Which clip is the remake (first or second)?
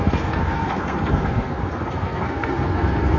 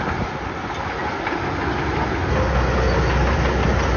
first